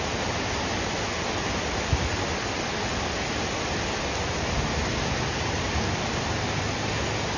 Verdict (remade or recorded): recorded